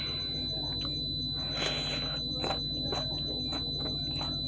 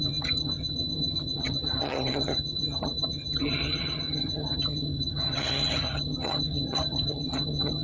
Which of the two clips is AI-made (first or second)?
second